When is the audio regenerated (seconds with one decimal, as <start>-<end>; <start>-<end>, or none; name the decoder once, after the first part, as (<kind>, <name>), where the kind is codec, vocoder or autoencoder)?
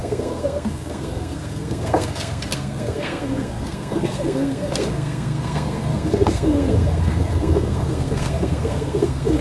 0.0-9.4 (codec, SNAC)